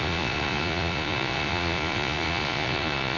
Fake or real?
fake